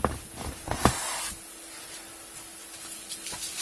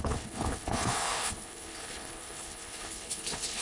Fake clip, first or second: second